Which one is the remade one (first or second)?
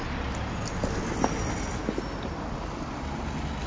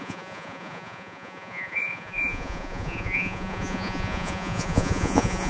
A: second